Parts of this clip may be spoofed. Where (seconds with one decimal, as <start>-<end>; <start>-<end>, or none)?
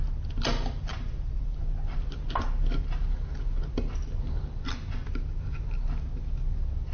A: 0.9-1.6